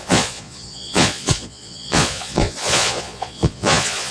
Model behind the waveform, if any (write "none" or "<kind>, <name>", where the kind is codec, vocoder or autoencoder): vocoder, Vocos